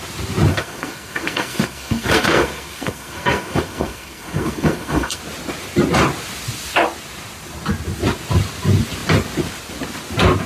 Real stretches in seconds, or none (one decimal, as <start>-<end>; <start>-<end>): 0.0-0.5; 5.2-10.5